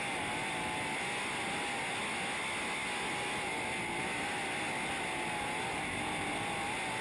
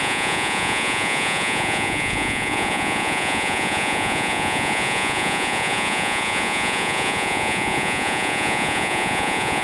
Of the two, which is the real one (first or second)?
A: first